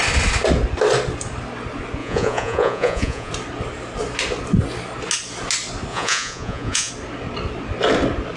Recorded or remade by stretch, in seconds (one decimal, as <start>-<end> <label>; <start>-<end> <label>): 0.0-2.0 recorded; 2.0-3.3 remade; 3.3-5.9 recorded; 5.9-6.9 remade; 6.9-8.4 recorded